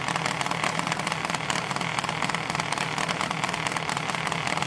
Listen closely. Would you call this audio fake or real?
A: real